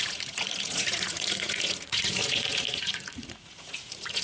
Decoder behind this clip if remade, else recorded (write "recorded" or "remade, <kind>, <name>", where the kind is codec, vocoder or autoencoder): remade, vocoder, Vocos